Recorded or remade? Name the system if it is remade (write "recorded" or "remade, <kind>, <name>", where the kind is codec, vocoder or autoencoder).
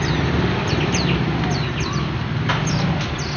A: recorded